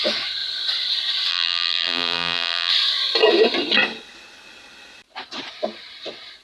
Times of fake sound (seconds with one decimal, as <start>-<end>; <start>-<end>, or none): 1.3-2.7